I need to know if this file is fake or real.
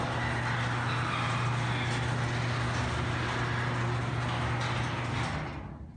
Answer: real